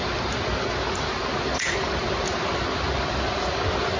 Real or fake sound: real